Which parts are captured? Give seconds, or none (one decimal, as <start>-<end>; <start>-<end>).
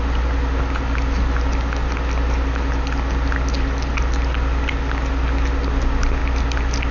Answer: 0.0-6.9